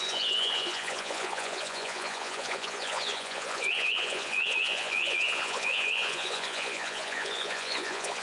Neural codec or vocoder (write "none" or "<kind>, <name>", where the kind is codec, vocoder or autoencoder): vocoder, Vocos